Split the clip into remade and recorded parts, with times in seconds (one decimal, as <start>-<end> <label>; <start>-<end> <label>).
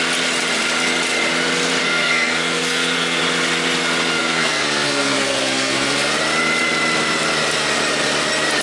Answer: 0.0-1.8 recorded; 1.8-3.2 remade; 3.2-4.2 recorded; 4.2-6.1 remade; 6.1-8.6 recorded